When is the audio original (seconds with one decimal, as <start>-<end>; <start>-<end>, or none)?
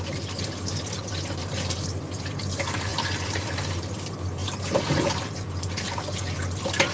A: 0.0-2.9; 3.6-4.4; 5.1-6.9